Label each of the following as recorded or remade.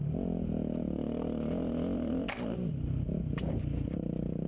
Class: recorded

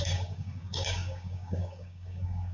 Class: remade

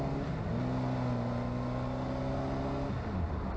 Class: recorded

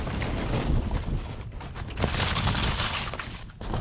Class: recorded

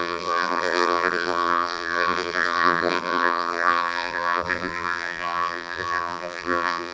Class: remade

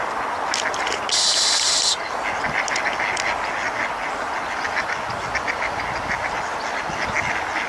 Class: recorded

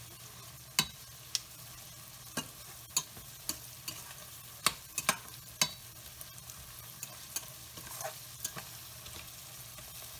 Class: recorded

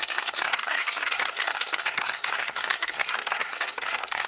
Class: remade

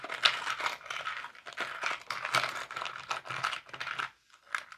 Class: recorded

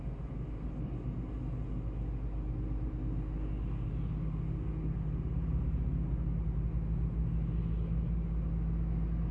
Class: recorded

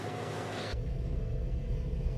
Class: remade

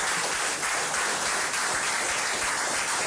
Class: recorded